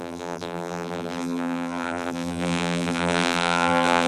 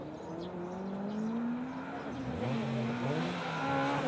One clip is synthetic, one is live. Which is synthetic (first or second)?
first